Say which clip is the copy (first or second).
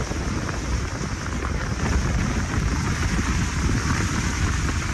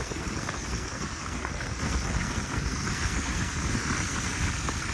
second